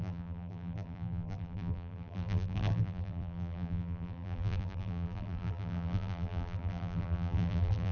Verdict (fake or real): fake